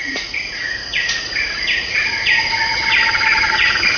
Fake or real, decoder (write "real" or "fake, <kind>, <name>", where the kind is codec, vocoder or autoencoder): fake, vocoder, Vocos